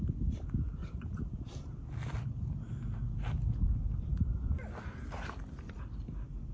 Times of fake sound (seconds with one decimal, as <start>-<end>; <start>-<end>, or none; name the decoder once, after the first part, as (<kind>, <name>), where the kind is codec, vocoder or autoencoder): 0.8-1.9 (vocoder, BigVGAN v2); 4.1-6.5